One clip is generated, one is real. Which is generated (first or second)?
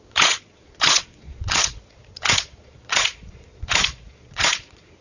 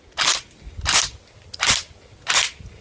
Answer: first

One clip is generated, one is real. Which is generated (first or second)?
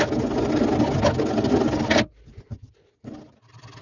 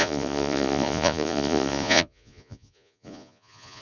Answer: second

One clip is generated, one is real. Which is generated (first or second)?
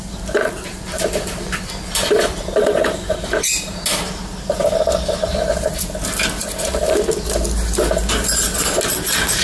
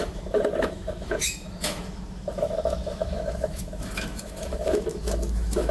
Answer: second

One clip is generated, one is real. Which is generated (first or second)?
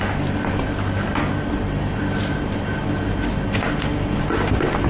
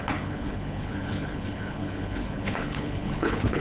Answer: second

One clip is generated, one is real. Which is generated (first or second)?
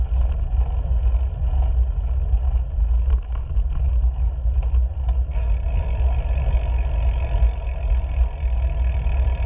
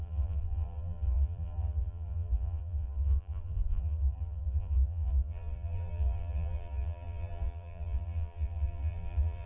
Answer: second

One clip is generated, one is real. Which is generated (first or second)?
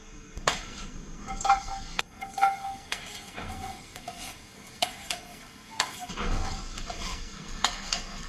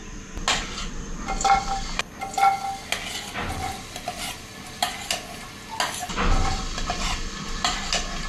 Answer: first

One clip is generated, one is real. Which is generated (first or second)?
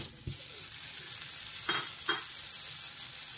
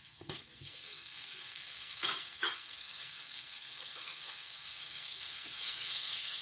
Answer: second